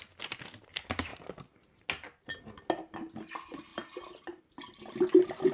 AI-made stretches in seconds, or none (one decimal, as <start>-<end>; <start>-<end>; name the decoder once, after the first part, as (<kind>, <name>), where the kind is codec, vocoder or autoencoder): none